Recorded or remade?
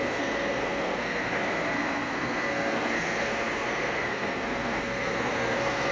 remade